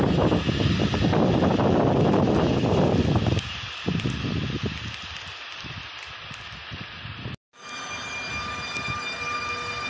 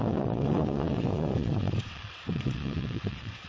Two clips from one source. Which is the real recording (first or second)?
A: first